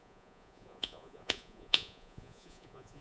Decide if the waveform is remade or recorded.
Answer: remade